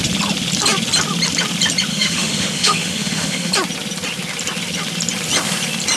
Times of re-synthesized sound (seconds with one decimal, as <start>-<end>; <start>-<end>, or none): 1.9-3.5